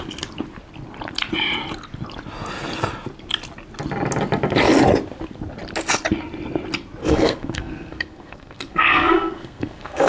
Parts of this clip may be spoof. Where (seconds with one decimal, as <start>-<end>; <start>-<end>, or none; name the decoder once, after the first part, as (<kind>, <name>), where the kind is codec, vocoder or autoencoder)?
7.0-10.1 (codec, SNAC)